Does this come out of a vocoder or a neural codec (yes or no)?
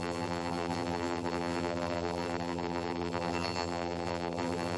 yes